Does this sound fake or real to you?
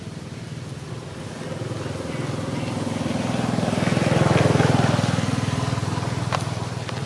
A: real